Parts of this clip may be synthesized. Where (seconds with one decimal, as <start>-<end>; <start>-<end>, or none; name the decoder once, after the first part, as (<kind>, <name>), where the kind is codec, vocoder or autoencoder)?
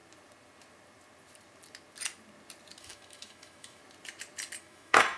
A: 2.8-3.8 (autoencoder, DAC-VAE); 4.6-5.2